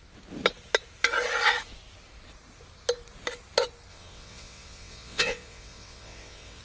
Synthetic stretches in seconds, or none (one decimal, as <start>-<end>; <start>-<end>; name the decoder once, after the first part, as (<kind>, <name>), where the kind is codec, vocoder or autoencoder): 3.9-6.6 (vocoder, WaveNeXt)